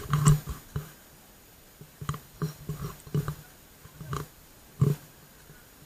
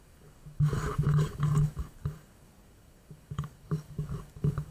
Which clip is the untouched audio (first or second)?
first